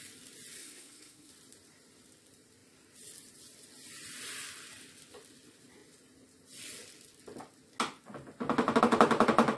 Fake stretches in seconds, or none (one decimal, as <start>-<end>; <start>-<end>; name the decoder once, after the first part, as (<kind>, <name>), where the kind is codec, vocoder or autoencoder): 0.6-1.3 (codec, SNAC)